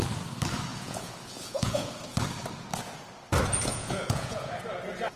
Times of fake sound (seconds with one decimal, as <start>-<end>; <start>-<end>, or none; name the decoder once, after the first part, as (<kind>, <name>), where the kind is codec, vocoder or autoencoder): 0.7-1.9 (vocoder, Vocos); 3.7-4.6

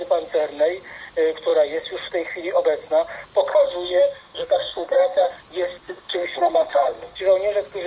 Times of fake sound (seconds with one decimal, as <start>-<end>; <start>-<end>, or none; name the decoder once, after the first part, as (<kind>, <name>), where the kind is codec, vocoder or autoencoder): 3.5-5.3 (codec, SNAC); 5.8-7.2

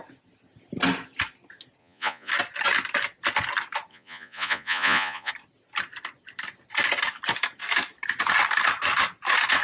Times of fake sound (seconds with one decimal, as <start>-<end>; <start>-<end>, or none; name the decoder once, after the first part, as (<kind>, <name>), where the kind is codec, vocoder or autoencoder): 1.8-2.3 (vocoder, Vocos); 3.9-5.3

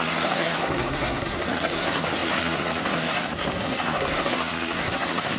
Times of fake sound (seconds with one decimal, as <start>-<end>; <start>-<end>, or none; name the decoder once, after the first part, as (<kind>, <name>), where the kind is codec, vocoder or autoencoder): 0.0-5.4 (codec, SNAC)

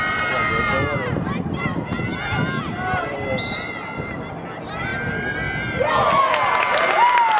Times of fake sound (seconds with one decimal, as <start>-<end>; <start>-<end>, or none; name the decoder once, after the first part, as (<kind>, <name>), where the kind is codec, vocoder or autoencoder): none

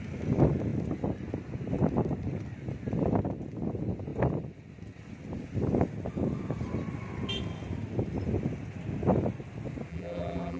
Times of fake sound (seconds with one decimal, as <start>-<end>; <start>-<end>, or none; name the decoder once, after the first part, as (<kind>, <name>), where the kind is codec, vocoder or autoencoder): 9.9-10.6 (vocoder, BigVGAN v2)

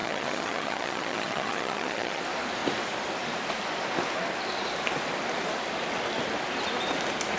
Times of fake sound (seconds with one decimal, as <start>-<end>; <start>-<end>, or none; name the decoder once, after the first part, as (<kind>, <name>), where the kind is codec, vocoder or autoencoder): 0.0-2.2 (vocoder, HiFi-GAN)

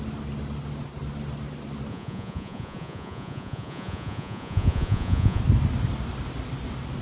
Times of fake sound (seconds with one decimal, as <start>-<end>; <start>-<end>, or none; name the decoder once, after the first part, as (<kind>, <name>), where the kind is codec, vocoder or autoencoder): 1.9-5.4 (vocoder, Vocos)